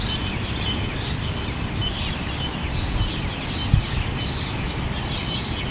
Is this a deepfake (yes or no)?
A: no